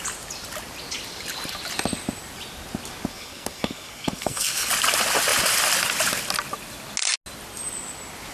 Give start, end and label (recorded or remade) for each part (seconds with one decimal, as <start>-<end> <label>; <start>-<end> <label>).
0.0-3.1 recorded; 3.1-4.7 remade; 4.7-8.3 recorded